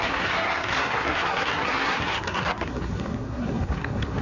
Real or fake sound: fake